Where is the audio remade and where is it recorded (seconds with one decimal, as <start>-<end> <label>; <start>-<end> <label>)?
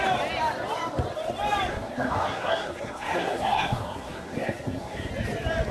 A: 0.0-1.7 recorded; 1.7-5.1 remade; 5.1-5.7 recorded